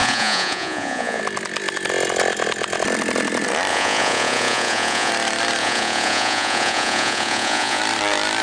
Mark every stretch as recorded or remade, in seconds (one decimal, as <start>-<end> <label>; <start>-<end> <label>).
0.0-1.2 remade; 1.2-3.7 recorded; 3.7-5.1 remade; 5.1-5.6 recorded; 5.6-7.8 remade; 7.8-8.4 recorded